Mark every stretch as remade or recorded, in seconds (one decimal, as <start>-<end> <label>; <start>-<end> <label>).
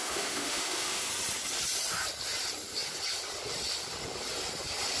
0.0-1.1 remade; 1.1-5.0 recorded